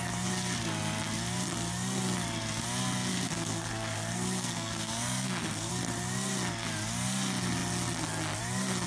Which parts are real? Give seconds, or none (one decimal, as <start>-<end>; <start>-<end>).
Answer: 0.0-3.1; 5.7-8.9